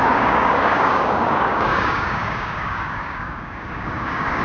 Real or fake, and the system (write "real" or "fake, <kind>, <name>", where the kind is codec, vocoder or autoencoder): fake, codec, DAC